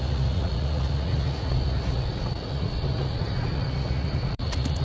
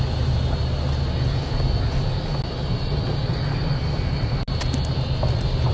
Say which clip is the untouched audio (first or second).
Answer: second